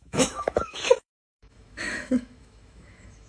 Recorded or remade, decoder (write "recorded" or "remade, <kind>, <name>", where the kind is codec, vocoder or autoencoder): remade, autoencoder, DAC-VAE